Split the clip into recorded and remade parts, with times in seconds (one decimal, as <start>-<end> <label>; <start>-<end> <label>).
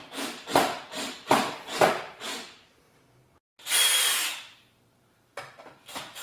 0.0-6.2 recorded